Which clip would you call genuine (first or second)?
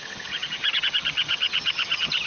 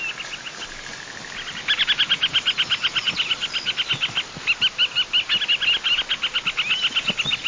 second